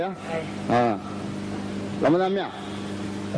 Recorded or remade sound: recorded